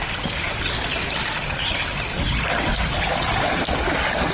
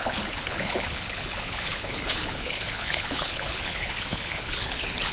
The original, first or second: first